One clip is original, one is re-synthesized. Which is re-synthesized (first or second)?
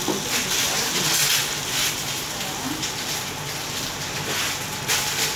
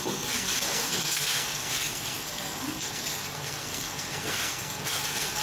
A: second